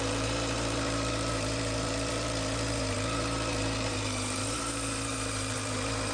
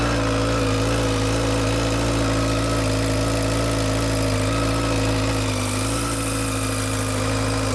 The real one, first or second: second